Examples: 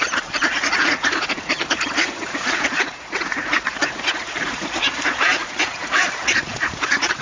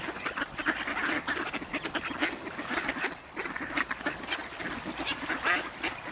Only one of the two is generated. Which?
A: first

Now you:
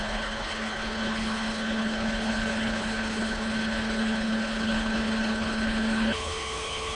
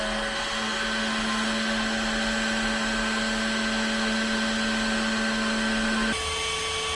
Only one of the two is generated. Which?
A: first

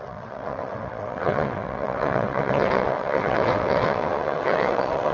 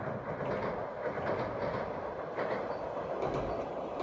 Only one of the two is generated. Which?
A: first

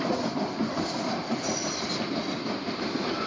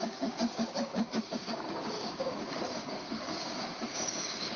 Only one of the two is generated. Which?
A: second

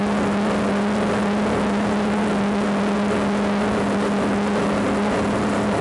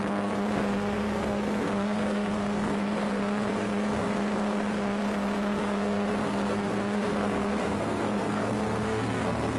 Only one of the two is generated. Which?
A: second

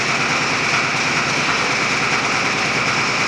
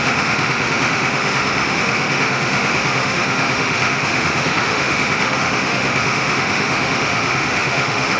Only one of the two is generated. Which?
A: second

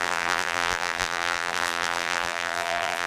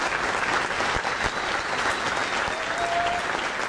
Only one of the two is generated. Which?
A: first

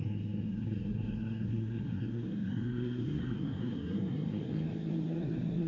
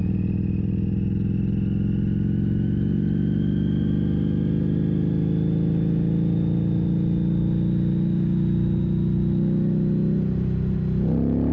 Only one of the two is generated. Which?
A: first